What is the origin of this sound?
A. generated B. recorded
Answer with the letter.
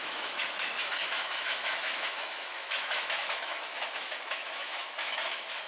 A